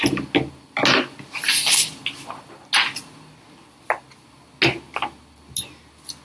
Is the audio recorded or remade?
recorded